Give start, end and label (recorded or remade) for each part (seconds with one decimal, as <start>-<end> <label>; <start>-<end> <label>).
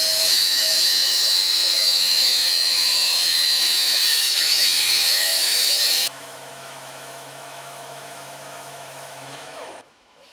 0.0-10.3 remade